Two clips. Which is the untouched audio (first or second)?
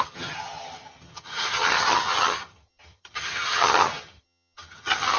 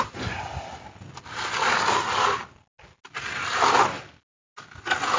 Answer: second